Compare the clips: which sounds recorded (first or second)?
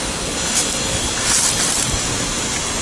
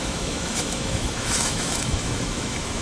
first